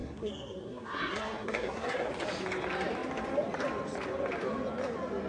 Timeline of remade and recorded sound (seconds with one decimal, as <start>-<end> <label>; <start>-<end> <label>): 0.0-2.1 remade; 2.1-5.3 recorded